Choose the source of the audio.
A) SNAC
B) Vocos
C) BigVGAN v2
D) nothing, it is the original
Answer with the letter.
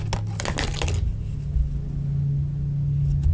D